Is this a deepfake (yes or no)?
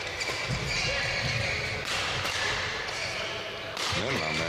no